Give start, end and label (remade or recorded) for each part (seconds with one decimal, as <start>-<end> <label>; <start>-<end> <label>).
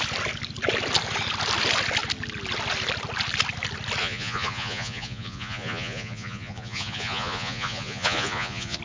0.0-4.0 recorded; 4.0-8.8 remade